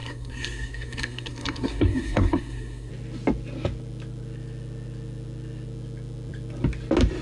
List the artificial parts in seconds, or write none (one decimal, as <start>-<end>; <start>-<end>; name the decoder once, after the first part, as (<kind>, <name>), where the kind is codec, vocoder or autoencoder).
0.0-2.9 (codec, SNAC)